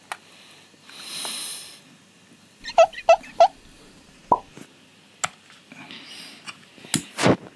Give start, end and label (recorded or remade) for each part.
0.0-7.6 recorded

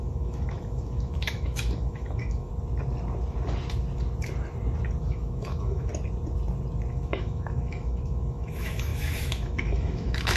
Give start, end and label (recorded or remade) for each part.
0.0-2.5 remade; 2.5-5.0 recorded; 5.0-5.9 remade; 5.9-6.9 recorded; 6.9-10.4 remade

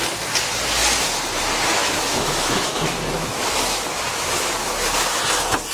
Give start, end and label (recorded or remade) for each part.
0.0-1.8 recorded; 1.8-5.2 remade; 5.2-5.7 recorded

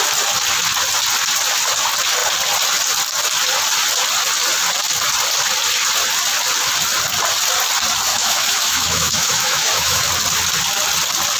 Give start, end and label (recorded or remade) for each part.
0.0-8.1 recorded; 8.1-10.0 remade; 10.0-11.4 recorded

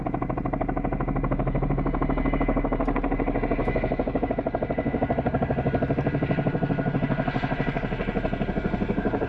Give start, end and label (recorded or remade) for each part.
0.0-3.6 recorded; 3.6-4.3 remade; 4.3-9.3 recorded

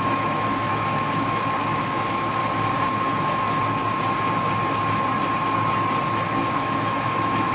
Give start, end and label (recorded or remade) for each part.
0.0-2.4 remade; 2.4-6.5 recorded; 6.5-7.5 remade